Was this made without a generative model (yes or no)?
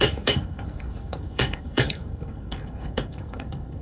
no